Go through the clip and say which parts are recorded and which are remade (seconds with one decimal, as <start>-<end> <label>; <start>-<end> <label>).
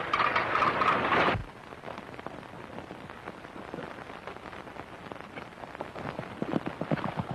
0.0-7.3 recorded